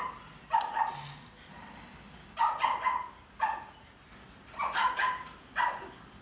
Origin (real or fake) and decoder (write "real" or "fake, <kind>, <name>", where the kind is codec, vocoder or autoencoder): real